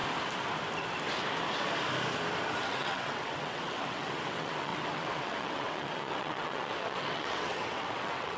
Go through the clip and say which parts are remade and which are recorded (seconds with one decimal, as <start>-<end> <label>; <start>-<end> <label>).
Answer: 0.0-2.6 recorded; 2.6-8.4 remade